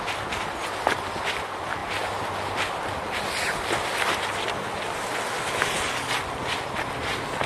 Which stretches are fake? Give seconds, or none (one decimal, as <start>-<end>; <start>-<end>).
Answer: none